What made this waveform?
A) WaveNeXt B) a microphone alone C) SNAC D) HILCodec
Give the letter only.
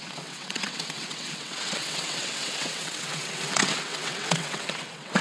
A